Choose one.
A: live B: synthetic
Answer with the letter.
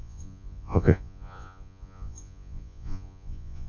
B